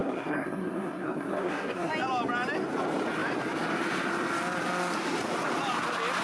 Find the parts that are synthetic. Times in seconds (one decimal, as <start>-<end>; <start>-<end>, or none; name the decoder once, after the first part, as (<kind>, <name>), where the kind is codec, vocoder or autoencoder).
0.0-1.9 (codec, SNAC)